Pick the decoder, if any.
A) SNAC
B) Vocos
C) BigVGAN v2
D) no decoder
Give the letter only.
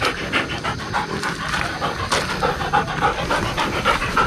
D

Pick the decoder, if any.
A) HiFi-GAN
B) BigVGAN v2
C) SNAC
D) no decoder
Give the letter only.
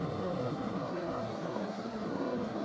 C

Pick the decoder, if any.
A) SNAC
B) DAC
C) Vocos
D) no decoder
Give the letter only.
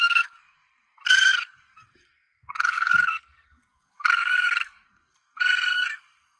A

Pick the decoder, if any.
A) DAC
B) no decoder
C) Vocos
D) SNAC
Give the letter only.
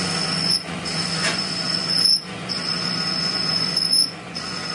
C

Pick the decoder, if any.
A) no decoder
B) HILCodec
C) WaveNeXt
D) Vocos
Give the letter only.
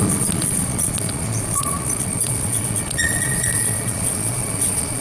D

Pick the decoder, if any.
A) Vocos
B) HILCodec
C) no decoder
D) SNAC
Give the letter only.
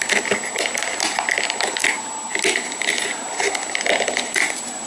C